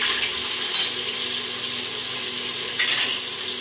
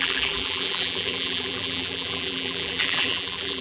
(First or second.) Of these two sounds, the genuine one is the first